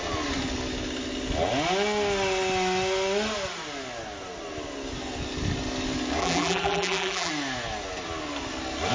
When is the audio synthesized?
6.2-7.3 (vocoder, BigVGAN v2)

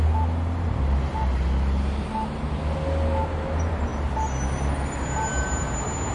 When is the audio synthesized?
none

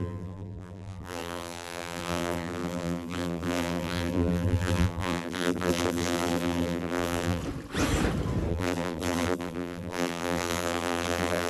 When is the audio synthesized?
0.0-7.4 (vocoder, BigVGAN v2); 8.5-11.5

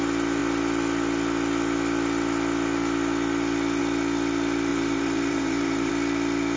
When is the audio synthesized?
4.7-5.9 (vocoder, BigVGAN v2)

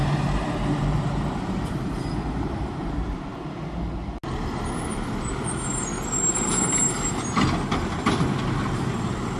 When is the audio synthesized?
0.0-3.3 (vocoder, BigVGAN v2); 8.4-9.4

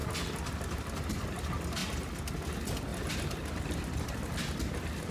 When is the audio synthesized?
0.0-1.1 (vocoder, BigVGAN v2); 2.9-5.1